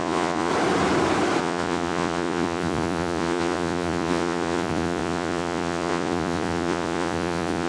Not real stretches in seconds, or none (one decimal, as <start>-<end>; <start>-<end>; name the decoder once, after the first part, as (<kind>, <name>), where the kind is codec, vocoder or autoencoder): 0.0-0.5 (vocoder, Vocos); 1.4-7.7